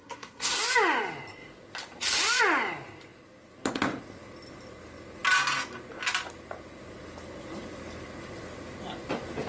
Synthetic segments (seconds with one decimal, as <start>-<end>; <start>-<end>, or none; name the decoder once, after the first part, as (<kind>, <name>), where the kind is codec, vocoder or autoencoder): 0.0-0.6 (codec, SNAC)